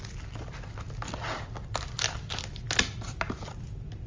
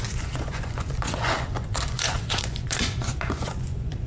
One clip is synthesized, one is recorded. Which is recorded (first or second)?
first